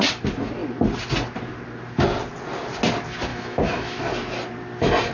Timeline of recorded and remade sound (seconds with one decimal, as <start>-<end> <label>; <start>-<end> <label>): 0.0-3.3 recorded; 3.3-4.0 remade; 4.0-5.1 recorded